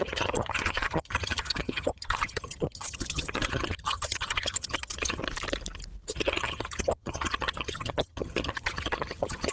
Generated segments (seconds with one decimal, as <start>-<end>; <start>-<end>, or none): 0.0-5.2; 6.1-9.5

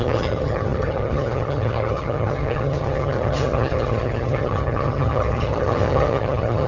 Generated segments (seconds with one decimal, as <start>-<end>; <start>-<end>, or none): 0.0-6.7

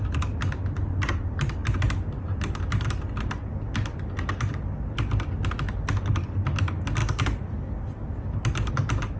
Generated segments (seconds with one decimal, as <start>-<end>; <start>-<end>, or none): none

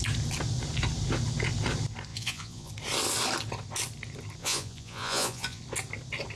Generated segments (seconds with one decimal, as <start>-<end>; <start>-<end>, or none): 2.1-2.7; 4.4-5.6

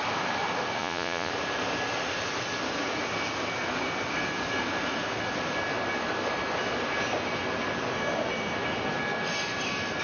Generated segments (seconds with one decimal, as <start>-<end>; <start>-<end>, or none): 0.8-1.3

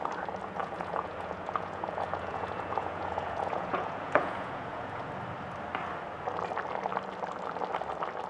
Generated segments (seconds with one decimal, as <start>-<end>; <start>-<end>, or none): 0.6-5.0